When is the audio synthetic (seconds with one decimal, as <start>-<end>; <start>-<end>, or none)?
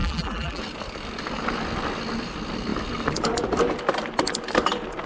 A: 0.0-0.6